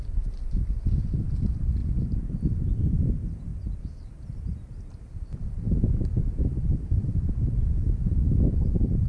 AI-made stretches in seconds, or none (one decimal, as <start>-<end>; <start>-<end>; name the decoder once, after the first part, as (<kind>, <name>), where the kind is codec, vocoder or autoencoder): 3.5-4.3 (vocoder, BigVGAN v2)